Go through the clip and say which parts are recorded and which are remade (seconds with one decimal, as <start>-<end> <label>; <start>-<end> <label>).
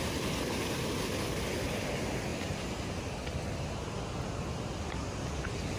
0.0-5.8 recorded